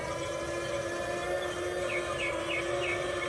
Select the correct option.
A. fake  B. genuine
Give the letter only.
B